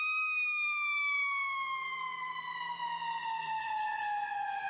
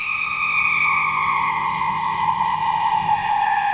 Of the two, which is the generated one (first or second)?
second